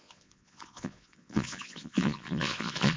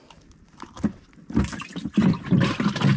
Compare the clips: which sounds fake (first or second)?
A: first